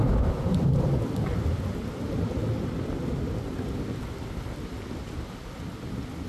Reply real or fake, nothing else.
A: real